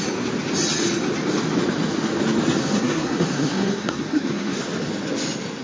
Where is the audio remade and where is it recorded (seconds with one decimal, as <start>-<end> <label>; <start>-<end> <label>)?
0.0-2.6 recorded; 2.6-4.6 remade; 4.6-5.6 recorded